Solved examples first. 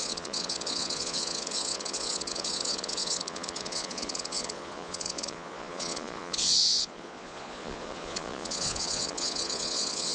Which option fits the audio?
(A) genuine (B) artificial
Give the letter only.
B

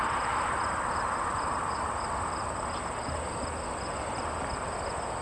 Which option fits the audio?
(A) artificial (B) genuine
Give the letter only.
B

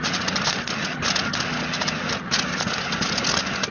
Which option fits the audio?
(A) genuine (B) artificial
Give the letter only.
A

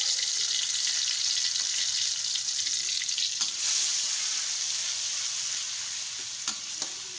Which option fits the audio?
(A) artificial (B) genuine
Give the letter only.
B